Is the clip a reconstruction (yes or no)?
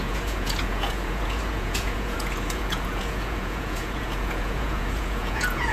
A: yes